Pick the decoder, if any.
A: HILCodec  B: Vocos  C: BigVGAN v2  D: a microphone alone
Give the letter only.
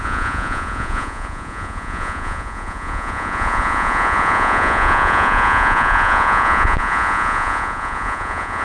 B